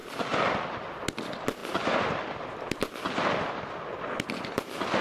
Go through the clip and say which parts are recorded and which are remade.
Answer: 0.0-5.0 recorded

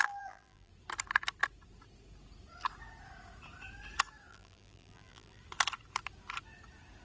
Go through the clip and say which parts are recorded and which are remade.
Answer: 0.0-0.7 remade; 0.7-4.3 recorded; 4.3-5.4 remade; 5.4-7.0 recorded

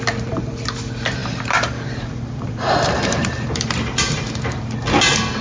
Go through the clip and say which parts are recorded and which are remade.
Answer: 0.0-1.2 recorded; 1.2-4.4 remade; 4.4-5.4 recorded

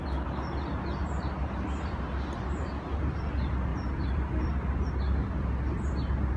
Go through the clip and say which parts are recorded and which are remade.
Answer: 0.0-1.0 recorded; 1.0-3.0 remade; 3.0-3.7 recorded; 3.7-4.9 remade; 4.9-6.4 recorded

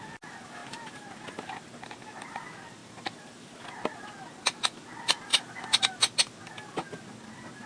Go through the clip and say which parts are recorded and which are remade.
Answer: 0.0-2.8 recorded; 2.8-3.6 remade; 3.6-5.3 recorded; 5.3-6.0 remade; 6.0-7.7 recorded

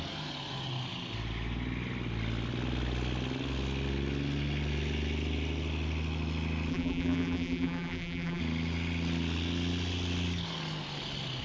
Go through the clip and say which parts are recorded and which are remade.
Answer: 0.0-6.7 recorded; 6.7-8.4 remade; 8.4-11.4 recorded